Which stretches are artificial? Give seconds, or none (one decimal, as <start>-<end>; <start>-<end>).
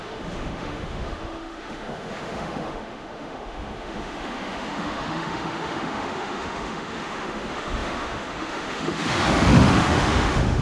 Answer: 0.0-10.6